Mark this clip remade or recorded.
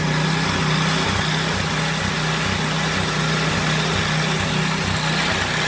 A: recorded